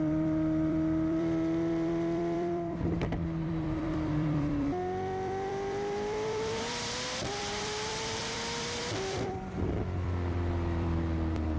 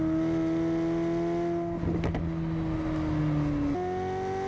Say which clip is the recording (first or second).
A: second